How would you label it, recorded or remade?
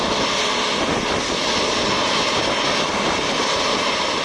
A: recorded